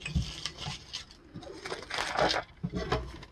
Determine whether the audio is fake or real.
real